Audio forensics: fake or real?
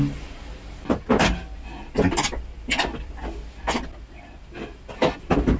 real